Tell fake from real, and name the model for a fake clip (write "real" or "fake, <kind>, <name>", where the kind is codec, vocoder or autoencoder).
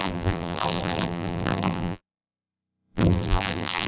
fake, vocoder, BigVGAN v2